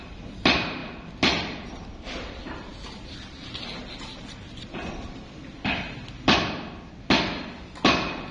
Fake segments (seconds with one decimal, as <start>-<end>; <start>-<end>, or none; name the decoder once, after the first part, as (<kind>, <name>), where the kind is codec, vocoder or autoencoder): none